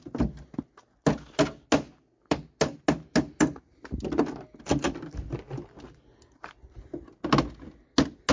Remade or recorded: recorded